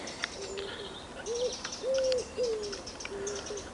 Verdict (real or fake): real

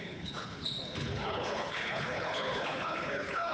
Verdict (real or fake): fake